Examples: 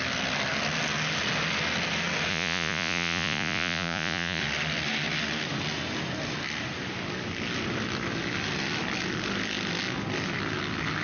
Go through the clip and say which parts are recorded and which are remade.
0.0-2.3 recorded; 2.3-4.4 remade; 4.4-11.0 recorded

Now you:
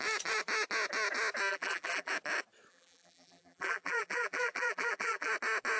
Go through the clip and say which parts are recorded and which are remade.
0.0-1.5 recorded; 1.5-2.1 remade; 2.1-2.7 recorded; 2.7-5.3 remade; 5.3-5.8 recorded